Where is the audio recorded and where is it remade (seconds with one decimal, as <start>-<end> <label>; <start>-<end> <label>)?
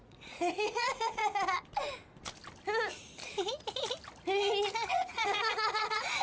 0.0-1.2 remade; 1.2-4.9 recorded; 4.9-6.2 remade